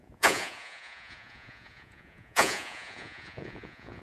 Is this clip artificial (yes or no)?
yes